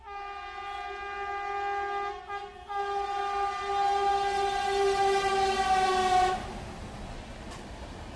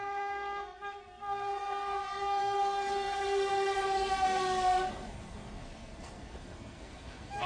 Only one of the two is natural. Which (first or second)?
first